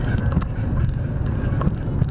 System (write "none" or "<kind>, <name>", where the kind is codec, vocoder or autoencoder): none